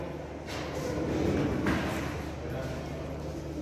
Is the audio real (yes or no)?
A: yes